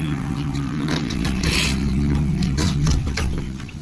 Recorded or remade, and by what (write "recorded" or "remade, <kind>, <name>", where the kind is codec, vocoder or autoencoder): remade, vocoder, WaveNeXt